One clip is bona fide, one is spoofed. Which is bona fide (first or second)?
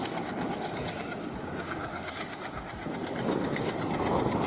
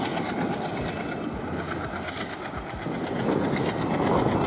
second